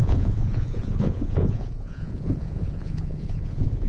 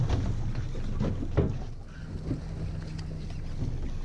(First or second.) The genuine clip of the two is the second